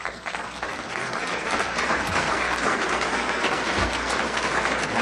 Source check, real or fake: fake